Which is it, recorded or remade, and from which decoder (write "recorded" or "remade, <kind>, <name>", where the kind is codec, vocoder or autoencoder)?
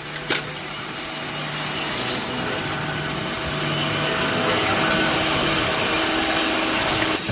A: recorded